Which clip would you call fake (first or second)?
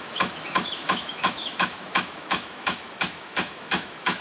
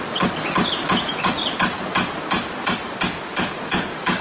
first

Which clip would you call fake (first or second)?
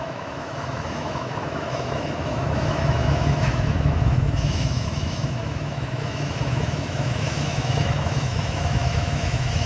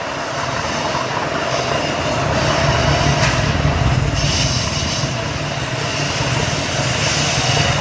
first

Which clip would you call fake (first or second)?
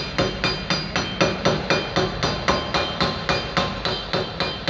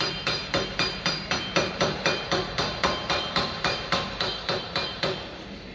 second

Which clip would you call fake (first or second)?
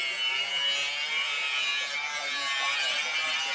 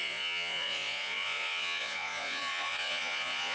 second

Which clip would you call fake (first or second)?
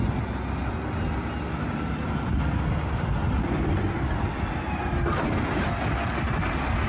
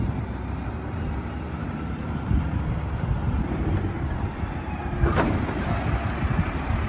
second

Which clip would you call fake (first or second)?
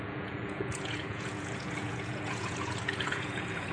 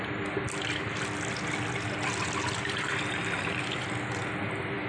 first